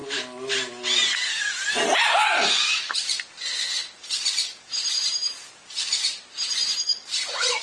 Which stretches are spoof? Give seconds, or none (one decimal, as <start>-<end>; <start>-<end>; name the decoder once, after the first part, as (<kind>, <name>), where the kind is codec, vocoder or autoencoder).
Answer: 5.4-7.6 (vocoder, BigVGAN v2)